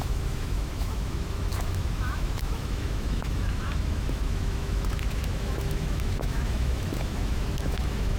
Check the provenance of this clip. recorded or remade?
remade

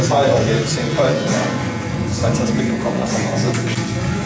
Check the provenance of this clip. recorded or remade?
remade